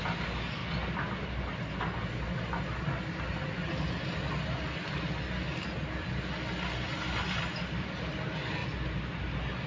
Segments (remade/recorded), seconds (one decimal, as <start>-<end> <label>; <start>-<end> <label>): 0.0-9.7 recorded

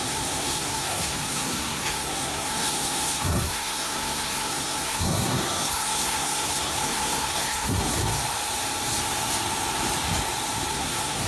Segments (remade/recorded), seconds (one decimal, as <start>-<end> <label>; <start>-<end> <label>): 0.0-8.2 remade; 8.2-10.7 recorded; 10.7-11.3 remade

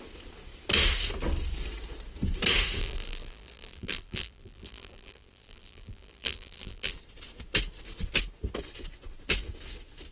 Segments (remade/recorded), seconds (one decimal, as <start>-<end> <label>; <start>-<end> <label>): 0.0-2.8 recorded; 2.8-6.9 remade; 6.9-10.1 recorded

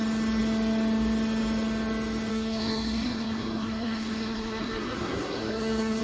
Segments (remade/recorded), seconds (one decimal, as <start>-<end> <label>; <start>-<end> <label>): 0.0-2.3 recorded; 2.3-6.0 remade

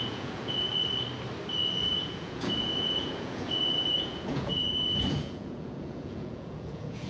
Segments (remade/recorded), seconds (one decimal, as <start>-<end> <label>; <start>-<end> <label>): 0.0-0.7 remade; 0.7-1.8 recorded; 1.8-7.1 remade

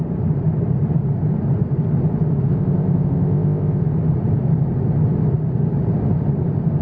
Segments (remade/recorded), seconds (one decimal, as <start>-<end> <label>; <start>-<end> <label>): 0.0-2.5 recorded; 2.5-3.8 remade; 3.8-6.8 recorded

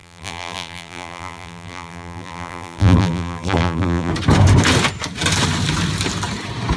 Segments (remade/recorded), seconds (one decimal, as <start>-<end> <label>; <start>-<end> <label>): 0.0-4.1 remade; 4.1-6.8 recorded

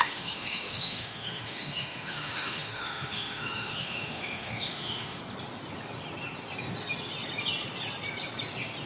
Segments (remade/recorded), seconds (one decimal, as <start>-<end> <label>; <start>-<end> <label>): 0.0-5.2 remade; 5.2-8.9 recorded